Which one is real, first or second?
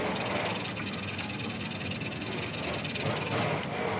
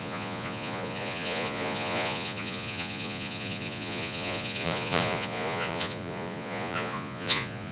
first